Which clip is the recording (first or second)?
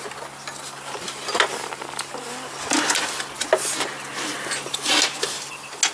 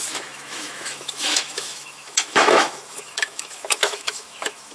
first